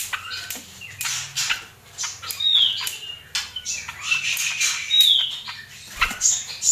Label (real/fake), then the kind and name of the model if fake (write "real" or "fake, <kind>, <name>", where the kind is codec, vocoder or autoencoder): real